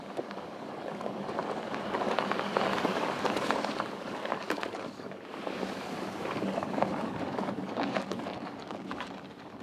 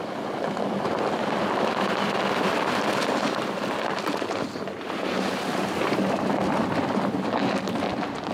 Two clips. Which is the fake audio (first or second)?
first